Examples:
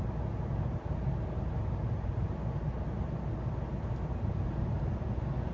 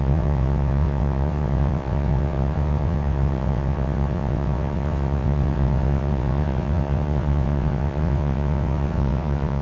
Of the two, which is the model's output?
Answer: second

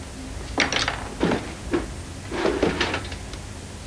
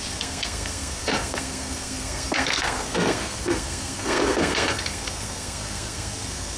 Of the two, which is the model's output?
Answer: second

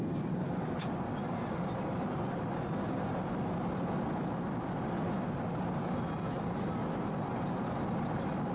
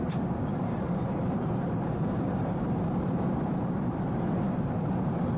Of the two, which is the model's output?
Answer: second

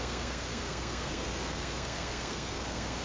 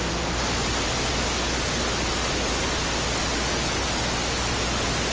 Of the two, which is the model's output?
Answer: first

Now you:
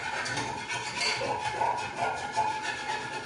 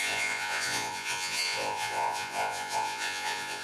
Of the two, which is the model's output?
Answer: second